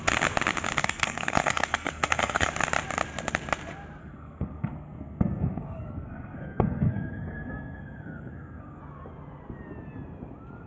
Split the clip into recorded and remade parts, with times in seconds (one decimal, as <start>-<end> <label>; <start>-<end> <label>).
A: 0.0-0.8 recorded; 0.8-2.5 remade; 2.5-4.0 recorded; 4.0-8.8 remade; 8.8-10.7 recorded